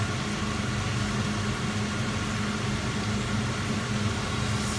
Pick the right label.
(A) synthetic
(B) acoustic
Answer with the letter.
B